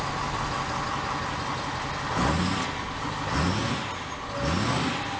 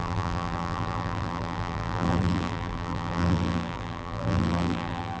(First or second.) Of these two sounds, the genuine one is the first